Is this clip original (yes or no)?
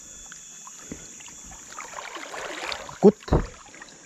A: yes